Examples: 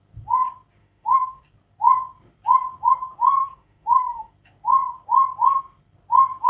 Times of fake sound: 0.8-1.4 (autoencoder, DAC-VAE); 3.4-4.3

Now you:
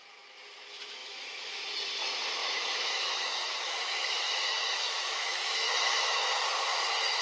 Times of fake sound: 1.0-1.7 (autoencoder, DAC-VAE); 2.4-6.4

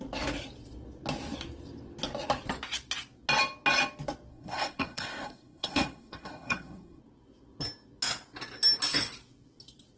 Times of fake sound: 4.3-7.0 (codec, SNAC)

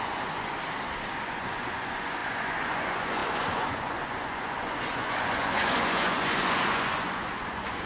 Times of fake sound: 0.0-0.6 (vocoder, Vocos); 1.2-7.9

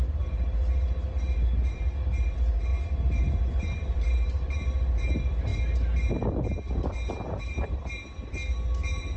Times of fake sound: 0.0-5.5 (vocoder, BigVGAN v2); 7.4-8.4